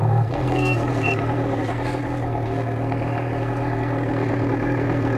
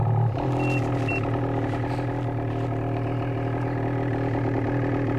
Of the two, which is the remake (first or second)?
first